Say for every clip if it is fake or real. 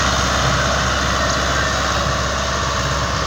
real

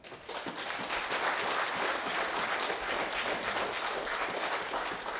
real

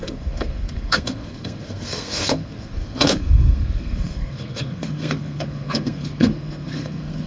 fake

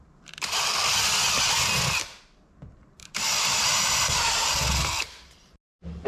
real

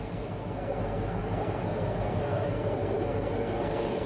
fake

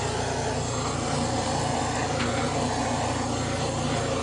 real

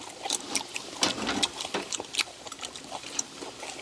real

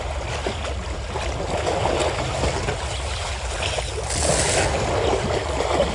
real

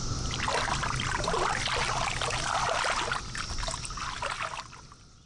real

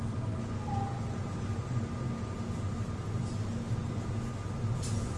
real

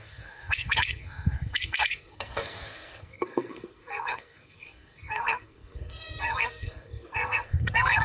fake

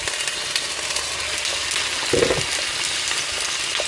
real